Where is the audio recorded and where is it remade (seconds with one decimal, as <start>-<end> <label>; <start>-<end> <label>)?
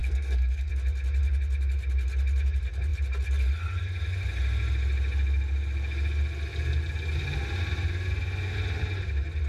0.0-0.7 remade; 0.7-9.5 recorded